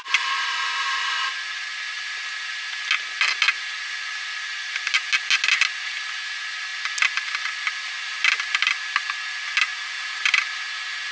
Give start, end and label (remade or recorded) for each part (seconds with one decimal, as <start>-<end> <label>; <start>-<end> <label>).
0.0-11.1 recorded